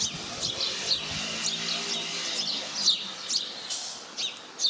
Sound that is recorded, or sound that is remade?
recorded